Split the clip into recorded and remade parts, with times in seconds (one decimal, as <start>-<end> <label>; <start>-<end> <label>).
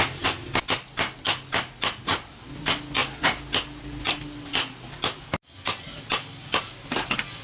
0.0-2.1 recorded; 2.1-2.6 remade; 2.6-7.4 recorded